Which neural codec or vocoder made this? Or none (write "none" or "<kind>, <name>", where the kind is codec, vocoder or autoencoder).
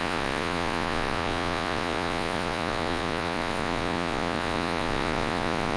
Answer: vocoder, Vocos